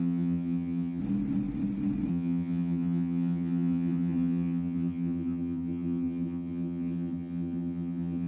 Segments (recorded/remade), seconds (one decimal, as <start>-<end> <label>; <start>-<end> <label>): 0.0-1.0 remade; 1.0-2.1 recorded; 2.1-8.3 remade